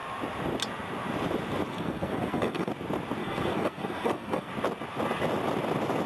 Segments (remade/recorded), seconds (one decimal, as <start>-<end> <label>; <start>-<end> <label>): 0.0-1.7 recorded; 1.7-2.7 remade; 2.7-3.2 recorded; 3.2-4.5 remade; 4.5-6.1 recorded